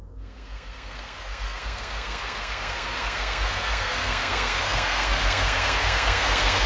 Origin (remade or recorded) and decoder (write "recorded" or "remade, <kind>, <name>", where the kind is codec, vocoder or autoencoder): remade, codec, SNAC